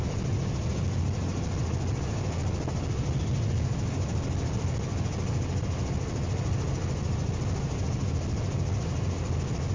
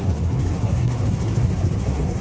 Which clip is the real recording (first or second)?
first